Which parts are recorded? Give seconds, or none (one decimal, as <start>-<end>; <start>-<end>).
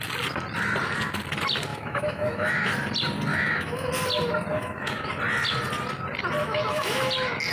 0.0-1.7; 2.7-3.3; 3.9-4.5; 5.1-6.4; 7.1-7.5